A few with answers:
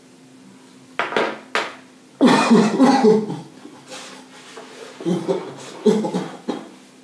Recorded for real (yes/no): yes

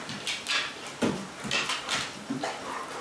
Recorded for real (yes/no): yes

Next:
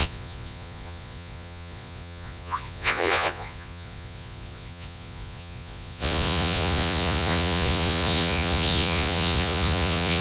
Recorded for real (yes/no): no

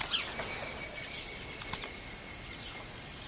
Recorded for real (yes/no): yes